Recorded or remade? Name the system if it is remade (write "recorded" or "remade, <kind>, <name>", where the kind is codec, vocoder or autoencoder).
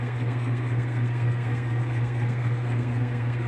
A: remade, codec, SNAC